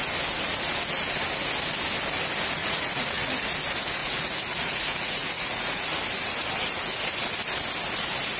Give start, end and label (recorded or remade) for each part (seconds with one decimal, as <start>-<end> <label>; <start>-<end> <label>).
0.0-2.6 recorded; 2.6-3.3 remade; 3.3-4.0 recorded; 4.0-6.0 remade; 6.0-8.4 recorded